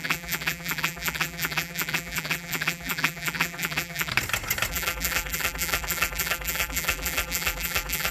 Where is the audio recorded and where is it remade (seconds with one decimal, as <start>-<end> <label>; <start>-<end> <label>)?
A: 0.0-4.1 remade; 4.1-4.7 recorded; 4.7-8.1 remade